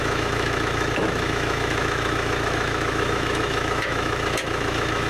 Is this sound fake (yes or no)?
yes